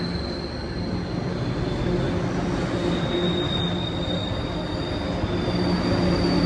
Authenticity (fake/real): real